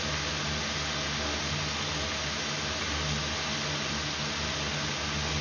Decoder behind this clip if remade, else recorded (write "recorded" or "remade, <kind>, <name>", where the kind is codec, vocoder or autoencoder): recorded